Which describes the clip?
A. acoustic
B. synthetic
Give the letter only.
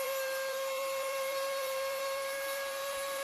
B